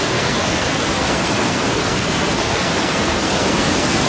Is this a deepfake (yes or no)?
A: yes